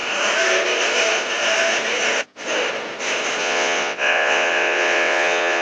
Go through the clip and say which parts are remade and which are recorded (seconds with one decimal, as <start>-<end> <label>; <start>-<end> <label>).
0.0-3.4 recorded; 3.4-5.6 remade